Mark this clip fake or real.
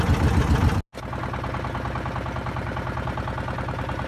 real